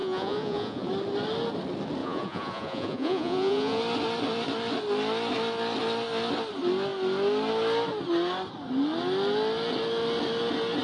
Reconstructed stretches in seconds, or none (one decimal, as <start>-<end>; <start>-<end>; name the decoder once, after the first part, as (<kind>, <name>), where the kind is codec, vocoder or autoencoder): 0.0-0.9 (vocoder, Vocos); 2.0-3.8